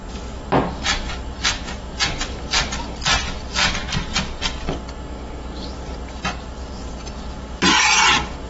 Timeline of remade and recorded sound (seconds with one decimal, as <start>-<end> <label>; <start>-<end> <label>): 0.0-8.5 recorded

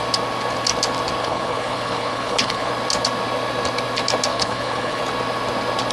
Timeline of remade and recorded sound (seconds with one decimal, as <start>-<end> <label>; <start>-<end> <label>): 0.0-1.2 recorded; 1.2-2.7 remade; 2.7-4.3 recorded; 4.3-5.0 remade; 5.0-5.9 recorded

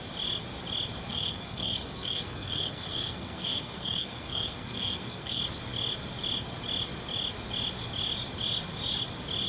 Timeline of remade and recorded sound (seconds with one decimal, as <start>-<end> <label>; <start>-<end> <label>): 0.0-1.1 recorded; 1.1-5.4 remade; 5.4-9.5 recorded

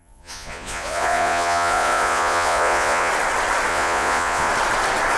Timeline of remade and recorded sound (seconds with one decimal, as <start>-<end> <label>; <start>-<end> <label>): 0.0-3.1 remade; 3.1-3.7 recorded; 3.7-4.5 remade; 4.5-5.2 recorded

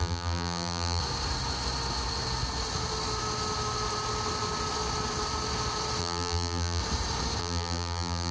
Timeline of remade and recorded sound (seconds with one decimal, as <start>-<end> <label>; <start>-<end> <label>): 0.0-1.0 remade; 1.0-6.0 recorded; 6.0-6.8 remade; 6.8-7.4 recorded; 7.4-8.3 remade

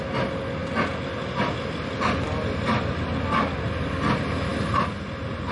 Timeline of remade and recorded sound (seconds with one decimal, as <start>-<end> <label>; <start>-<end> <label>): 0.0-5.5 recorded